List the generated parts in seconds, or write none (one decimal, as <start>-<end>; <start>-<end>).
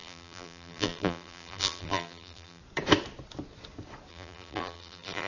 0.0-2.6; 4.1-5.3